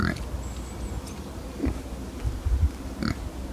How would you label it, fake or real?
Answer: real